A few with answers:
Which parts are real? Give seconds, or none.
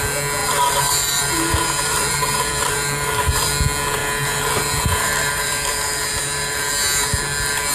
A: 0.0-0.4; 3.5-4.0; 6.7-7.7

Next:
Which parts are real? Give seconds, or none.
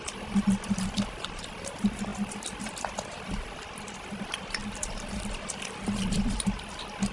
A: none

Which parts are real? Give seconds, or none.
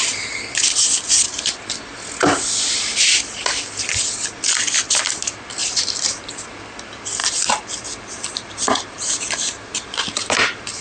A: 0.0-5.6; 6.3-7.2